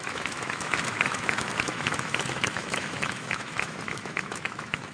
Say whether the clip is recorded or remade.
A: remade